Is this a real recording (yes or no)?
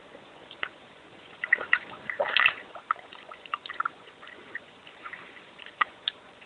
no